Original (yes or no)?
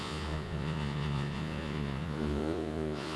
no